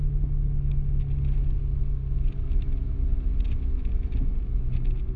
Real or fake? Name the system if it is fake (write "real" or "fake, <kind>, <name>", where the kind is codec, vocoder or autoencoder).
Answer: real